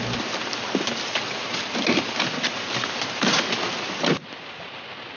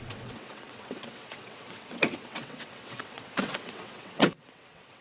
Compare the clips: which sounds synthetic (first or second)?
second